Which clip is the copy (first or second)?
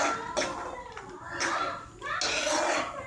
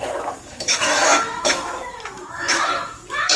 second